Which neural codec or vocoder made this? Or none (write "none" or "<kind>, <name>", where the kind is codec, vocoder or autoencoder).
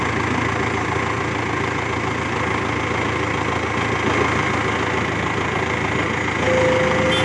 none